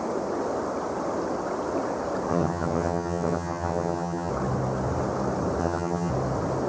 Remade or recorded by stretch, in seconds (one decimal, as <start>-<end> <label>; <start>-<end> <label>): 0.0-2.3 recorded; 2.3-4.3 remade; 4.3-5.6 recorded; 5.6-6.1 remade; 6.1-6.7 recorded

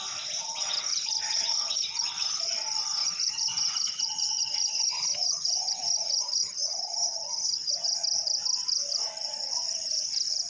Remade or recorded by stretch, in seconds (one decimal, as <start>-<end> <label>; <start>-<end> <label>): 0.0-0.4 recorded; 0.4-2.4 remade; 2.4-3.0 recorded; 3.0-7.7 remade; 7.7-10.5 recorded

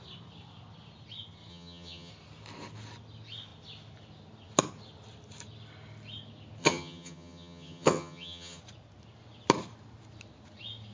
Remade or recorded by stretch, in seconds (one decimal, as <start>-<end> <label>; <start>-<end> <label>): 0.0-1.5 recorded; 1.5-2.1 remade; 2.1-6.6 recorded; 6.6-8.6 remade; 8.6-10.9 recorded

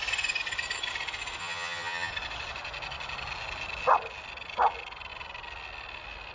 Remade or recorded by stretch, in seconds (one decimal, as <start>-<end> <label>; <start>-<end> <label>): 0.0-1.4 recorded; 1.4-2.1 remade; 2.1-6.3 recorded